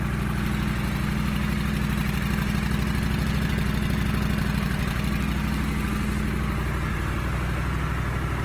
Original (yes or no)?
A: yes